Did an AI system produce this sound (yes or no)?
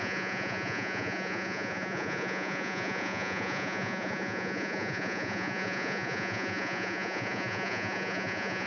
yes